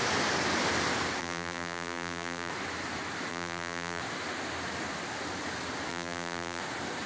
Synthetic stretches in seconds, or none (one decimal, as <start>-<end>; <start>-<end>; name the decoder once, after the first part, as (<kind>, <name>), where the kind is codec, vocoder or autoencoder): 1.2-2.5 (vocoder, BigVGAN v2); 3.3-4.0; 5.9-6.6